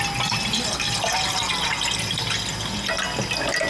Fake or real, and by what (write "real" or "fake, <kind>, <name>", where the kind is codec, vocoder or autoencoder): real